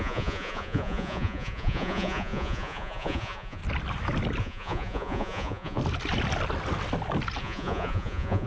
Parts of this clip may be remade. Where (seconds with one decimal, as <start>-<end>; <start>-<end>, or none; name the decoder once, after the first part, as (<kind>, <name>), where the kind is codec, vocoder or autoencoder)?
0.0-3.6 (vocoder, Vocos); 4.4-5.8; 7.4-8.5